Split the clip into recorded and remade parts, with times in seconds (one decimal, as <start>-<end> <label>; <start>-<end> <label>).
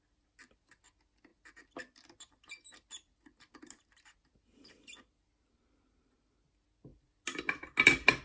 0.0-8.2 recorded